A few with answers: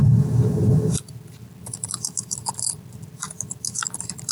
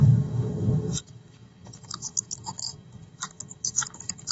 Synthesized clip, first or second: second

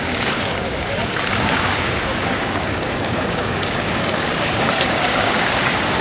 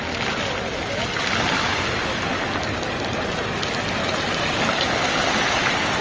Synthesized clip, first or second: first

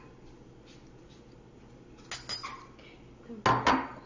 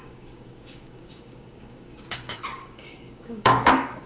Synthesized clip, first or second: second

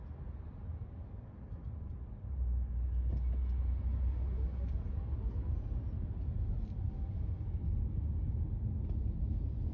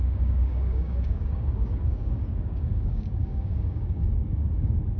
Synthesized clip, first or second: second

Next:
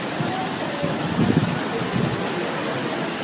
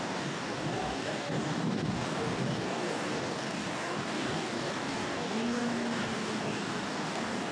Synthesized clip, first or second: second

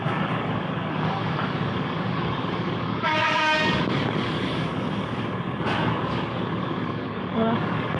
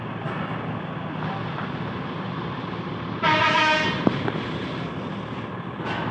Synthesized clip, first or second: first